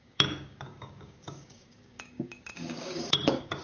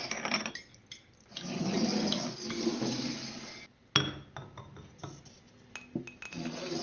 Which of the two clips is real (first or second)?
second